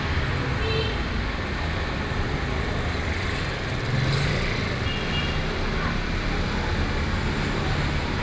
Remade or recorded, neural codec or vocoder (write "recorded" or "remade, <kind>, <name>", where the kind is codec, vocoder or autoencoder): recorded